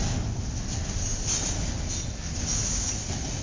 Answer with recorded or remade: recorded